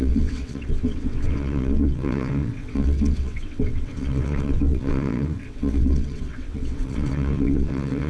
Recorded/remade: remade